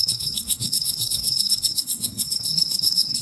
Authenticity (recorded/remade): remade